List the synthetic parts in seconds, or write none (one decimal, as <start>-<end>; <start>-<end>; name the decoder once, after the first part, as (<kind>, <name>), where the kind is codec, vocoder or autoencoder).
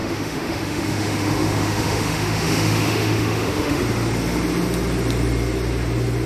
0.0-3.8 (autoencoder, DAC-VAE)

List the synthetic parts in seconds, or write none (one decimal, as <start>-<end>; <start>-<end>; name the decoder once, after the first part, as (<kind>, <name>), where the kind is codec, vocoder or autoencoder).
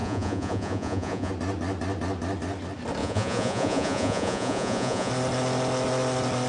0.0-1.3 (vocoder, Vocos); 3.0-5.1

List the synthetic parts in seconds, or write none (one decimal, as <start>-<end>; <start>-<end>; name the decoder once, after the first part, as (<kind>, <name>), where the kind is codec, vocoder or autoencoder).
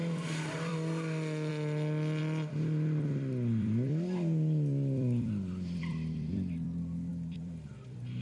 0.0-8.2 (vocoder, BigVGAN v2)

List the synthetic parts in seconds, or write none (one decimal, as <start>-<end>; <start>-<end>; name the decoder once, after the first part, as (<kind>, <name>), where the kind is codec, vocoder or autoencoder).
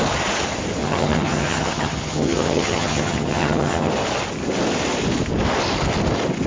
0.8-3.9 (vocoder, HiFi-GAN)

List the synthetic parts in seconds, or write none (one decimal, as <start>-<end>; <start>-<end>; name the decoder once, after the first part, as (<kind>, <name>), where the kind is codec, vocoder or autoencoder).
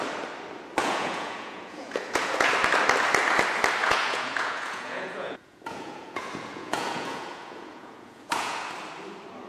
0.8-2.5 (vocoder, Vocos); 3.8-8.7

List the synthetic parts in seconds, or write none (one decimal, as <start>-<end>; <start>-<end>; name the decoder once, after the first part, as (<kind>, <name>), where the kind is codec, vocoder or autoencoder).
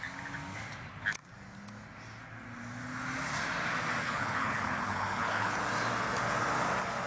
4.0-5.6 (codec, HILCodec)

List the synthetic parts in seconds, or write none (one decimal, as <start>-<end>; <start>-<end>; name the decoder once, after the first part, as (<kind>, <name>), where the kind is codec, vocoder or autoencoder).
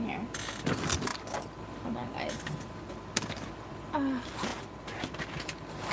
none